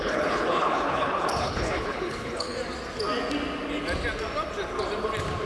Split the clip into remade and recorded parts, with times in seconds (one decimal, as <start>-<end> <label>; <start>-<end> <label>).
0.0-2.5 remade; 2.5-5.5 recorded